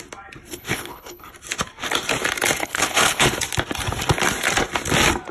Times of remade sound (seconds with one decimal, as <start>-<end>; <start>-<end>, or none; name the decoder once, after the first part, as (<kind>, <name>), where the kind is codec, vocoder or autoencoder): 0.5-1.3 (codec, HILCodec); 2.6-3.4